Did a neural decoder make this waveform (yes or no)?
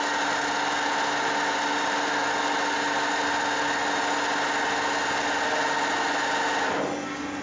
no